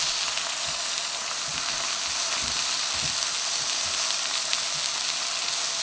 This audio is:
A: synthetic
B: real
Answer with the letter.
B